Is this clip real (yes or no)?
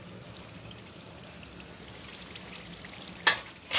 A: yes